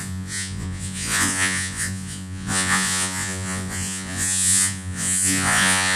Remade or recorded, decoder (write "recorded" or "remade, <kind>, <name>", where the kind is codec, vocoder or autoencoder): remade, vocoder, Vocos